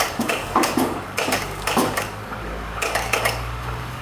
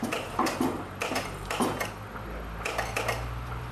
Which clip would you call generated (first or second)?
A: first